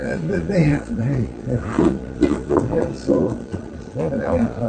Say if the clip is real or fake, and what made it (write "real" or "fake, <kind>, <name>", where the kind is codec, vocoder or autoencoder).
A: fake, vocoder, Vocos